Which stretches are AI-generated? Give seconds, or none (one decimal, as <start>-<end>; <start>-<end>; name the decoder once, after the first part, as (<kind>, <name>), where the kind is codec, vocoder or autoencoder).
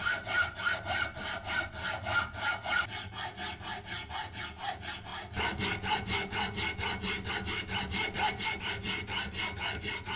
none